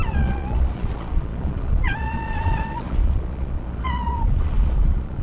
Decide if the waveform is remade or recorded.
remade